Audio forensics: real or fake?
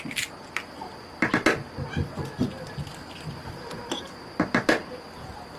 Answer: real